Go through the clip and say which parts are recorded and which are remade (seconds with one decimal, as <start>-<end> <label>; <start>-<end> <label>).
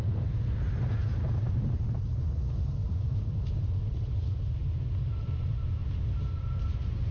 0.0-4.6 remade; 4.6-5.2 recorded; 5.2-5.8 remade; 5.8-6.4 recorded; 6.4-7.1 remade